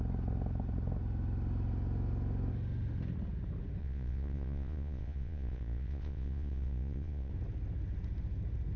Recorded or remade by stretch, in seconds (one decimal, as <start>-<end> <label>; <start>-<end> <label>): 0.0-3.8 recorded; 3.8-7.3 remade; 7.3-8.8 recorded